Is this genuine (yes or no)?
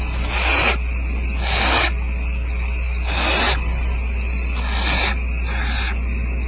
yes